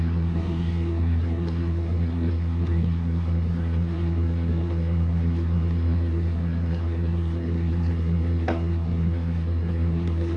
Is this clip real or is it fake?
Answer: fake